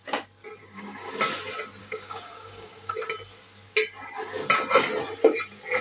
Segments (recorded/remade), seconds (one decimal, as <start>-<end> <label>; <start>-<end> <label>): 0.0-0.6 recorded; 0.6-1.1 remade; 1.1-1.8 recorded; 1.8-3.0 remade; 3.0-5.8 recorded